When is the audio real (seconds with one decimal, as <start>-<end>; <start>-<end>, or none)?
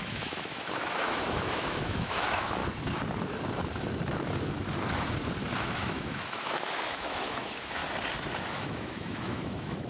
2.6-5.6; 7.8-8.4